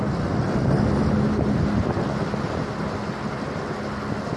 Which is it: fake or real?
real